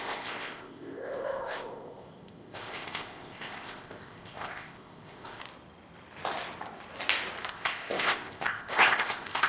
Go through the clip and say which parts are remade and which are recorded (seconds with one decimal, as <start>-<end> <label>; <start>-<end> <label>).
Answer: 0.0-5.4 remade; 5.4-7.5 recorded; 7.5-9.5 remade